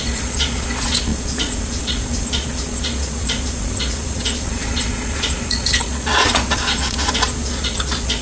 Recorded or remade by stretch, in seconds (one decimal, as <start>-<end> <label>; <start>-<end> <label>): 0.0-8.2 remade